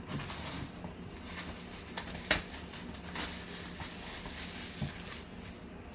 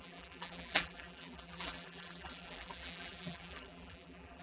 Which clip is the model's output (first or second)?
second